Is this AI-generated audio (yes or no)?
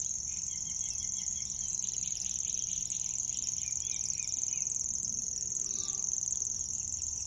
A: no